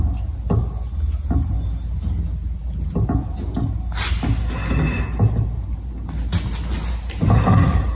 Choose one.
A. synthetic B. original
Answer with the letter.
B